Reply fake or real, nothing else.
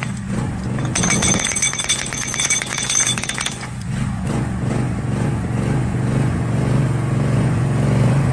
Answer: fake